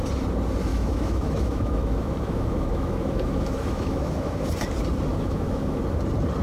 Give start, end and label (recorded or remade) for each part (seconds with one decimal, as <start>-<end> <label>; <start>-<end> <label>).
0.0-0.7 recorded; 0.7-4.5 remade; 4.5-5.1 recorded; 5.1-5.8 remade; 5.8-6.4 recorded